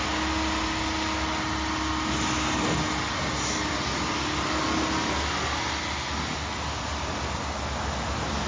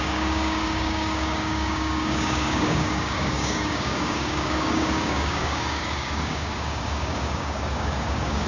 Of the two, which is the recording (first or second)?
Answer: first